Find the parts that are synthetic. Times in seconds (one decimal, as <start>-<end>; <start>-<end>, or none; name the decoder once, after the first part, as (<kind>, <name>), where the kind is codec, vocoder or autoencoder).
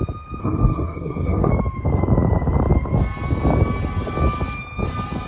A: 0.4-1.5 (codec, SNAC)